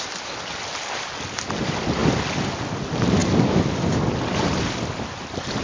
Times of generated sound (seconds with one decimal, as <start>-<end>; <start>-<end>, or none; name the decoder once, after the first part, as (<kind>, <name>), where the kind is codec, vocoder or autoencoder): none